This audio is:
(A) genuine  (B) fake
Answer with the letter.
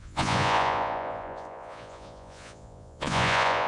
B